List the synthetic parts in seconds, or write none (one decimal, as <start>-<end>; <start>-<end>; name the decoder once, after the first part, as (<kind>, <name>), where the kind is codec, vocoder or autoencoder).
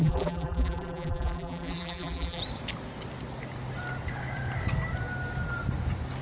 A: 0.0-2.4 (vocoder, BigVGAN v2)